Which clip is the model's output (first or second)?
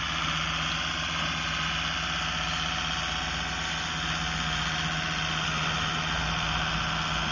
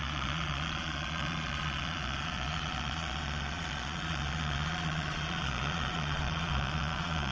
second